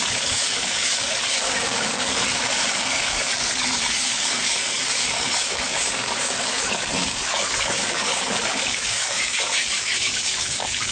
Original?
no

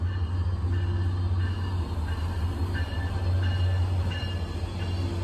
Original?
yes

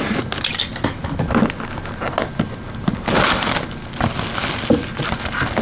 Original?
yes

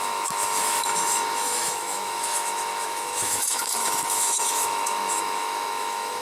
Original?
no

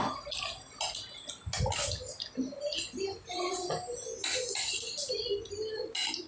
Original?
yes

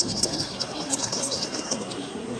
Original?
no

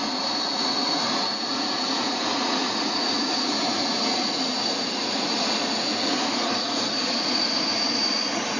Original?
no